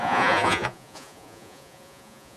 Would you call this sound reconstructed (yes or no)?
yes